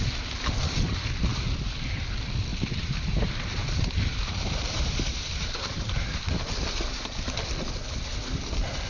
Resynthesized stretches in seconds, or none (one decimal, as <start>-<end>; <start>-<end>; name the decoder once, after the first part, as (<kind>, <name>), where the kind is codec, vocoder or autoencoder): 2.5-6.2 (vocoder, BigVGAN v2)